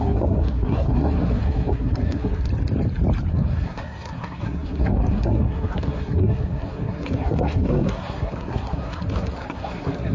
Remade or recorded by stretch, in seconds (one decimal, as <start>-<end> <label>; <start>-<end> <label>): 0.0-2.5 remade; 2.5-3.3 recorded; 3.3-10.1 remade